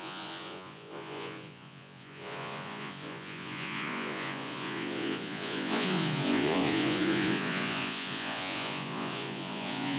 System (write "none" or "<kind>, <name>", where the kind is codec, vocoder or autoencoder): vocoder, Vocos